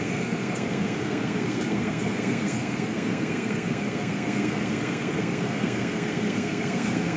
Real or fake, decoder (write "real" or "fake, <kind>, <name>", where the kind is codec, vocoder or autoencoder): fake, codec, SNAC